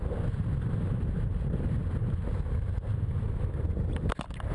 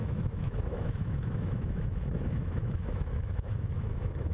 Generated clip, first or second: second